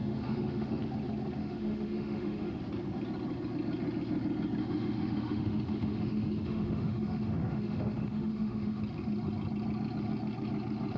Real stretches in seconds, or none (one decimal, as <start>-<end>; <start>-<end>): 0.8-1.4; 2.6-4.6; 8.8-11.0

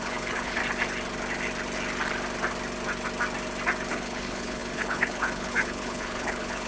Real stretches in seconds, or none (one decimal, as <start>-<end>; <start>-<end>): 0.6-3.9

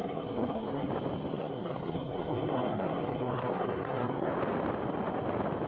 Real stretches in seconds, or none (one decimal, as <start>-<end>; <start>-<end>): 0.9-1.3; 4.3-5.7

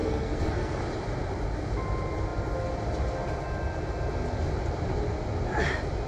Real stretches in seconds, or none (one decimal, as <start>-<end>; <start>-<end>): 0.8-6.1

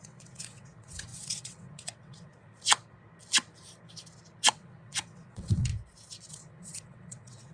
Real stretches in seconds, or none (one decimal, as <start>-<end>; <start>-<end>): 2.3-4.5; 5.7-6.3